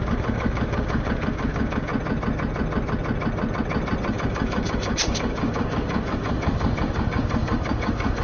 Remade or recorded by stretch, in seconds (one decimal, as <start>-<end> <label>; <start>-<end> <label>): 0.0-1.9 remade; 1.9-4.1 recorded; 4.1-8.2 remade